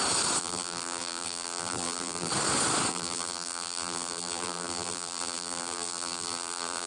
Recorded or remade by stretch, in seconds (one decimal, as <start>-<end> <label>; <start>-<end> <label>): 0.0-0.4 recorded; 0.4-2.3 remade; 2.3-2.9 recorded; 2.9-6.9 remade